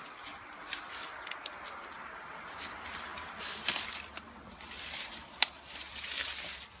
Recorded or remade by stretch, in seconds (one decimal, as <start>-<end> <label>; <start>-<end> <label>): 0.0-6.8 recorded